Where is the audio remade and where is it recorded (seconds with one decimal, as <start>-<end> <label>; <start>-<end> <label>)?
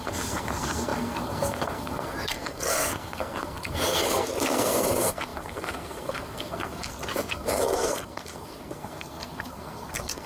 0.0-10.3 remade